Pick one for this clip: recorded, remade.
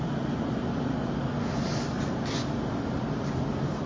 recorded